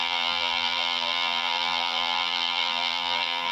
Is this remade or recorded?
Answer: remade